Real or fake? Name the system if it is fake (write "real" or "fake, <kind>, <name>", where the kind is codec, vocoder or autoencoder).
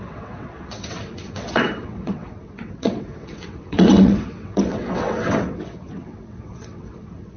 fake, vocoder, WaveNeXt